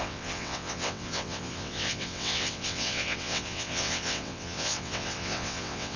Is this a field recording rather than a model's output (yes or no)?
no